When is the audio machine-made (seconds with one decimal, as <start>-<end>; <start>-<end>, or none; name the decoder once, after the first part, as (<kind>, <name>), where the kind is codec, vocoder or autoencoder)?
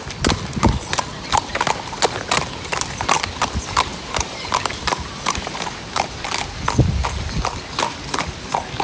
1.1-1.7 (vocoder, BigVGAN v2); 3.9-6.4